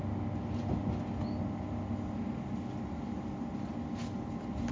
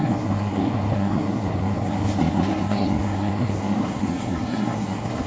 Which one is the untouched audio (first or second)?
first